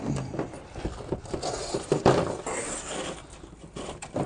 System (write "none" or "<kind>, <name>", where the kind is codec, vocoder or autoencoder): none